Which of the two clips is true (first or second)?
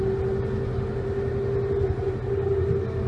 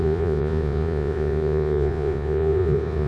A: first